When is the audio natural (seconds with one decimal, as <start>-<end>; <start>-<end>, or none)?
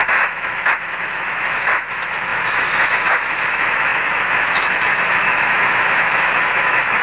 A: none